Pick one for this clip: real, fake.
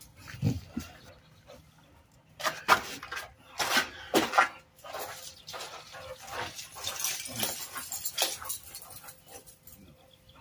real